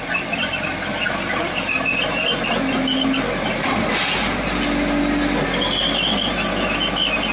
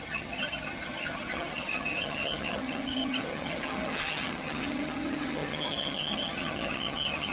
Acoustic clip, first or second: first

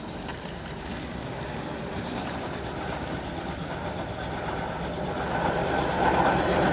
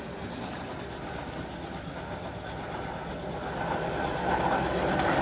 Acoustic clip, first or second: second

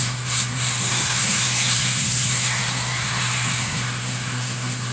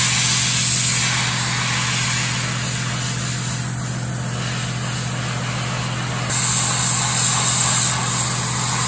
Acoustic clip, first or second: second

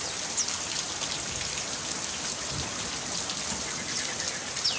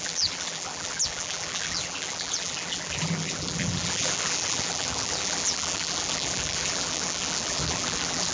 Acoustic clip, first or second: first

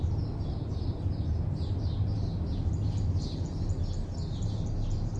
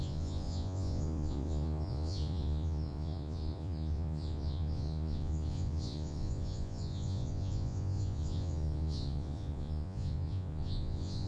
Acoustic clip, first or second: first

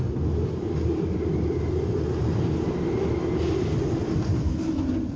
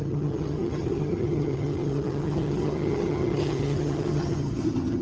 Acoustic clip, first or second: first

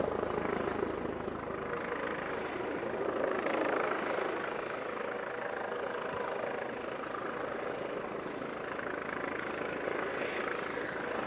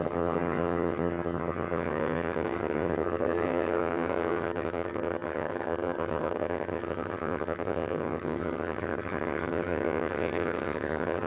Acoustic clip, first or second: first